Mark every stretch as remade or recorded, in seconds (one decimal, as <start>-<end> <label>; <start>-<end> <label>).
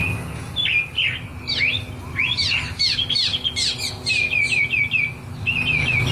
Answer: 0.0-6.1 recorded